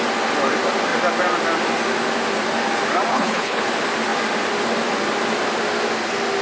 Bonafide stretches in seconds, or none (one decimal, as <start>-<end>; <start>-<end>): 0.0-3.1; 3.6-6.4